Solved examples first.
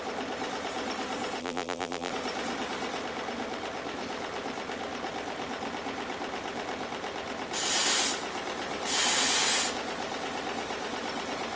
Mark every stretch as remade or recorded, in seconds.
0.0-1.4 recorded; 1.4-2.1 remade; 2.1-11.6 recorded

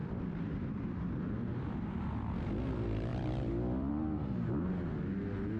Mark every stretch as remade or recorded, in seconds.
0.0-2.0 remade; 2.0-3.1 recorded; 3.1-3.9 remade; 3.9-5.6 recorded

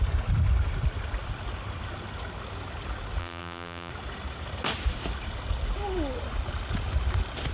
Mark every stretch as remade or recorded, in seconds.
0.0-3.2 recorded; 3.2-3.9 remade; 3.9-7.5 recorded

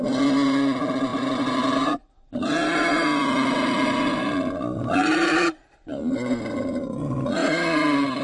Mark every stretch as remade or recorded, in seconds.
0.0-1.1 recorded; 1.1-2.1 remade; 2.1-5.9 recorded; 5.9-6.7 remade; 6.7-7.4 recorded; 7.4-8.2 remade

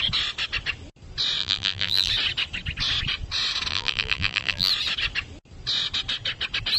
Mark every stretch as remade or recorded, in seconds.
0.0-1.4 recorded; 1.4-2.1 remade; 2.1-3.7 recorded; 3.7-4.7 remade; 4.7-6.8 recorded

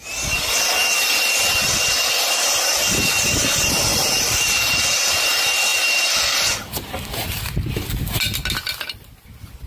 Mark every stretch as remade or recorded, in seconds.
0.0-3.9 recorded; 3.9-4.6 remade; 4.6-5.7 recorded; 5.7-6.9 remade; 6.9-9.7 recorded

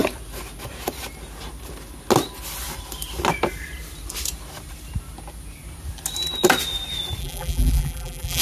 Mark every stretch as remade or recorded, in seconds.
0.0-7.2 recorded; 7.2-8.4 remade